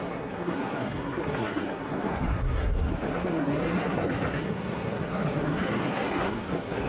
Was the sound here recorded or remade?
remade